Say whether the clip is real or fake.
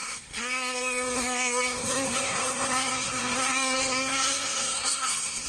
fake